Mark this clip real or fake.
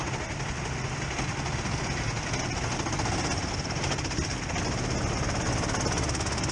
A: real